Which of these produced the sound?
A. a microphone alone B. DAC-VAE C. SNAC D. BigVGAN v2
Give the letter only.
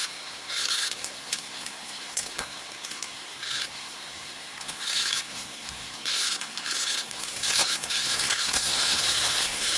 C